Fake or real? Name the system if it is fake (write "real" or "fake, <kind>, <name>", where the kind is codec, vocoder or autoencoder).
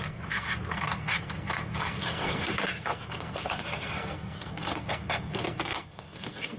fake, codec, SNAC